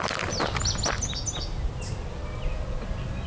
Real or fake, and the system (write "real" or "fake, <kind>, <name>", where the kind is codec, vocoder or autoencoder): real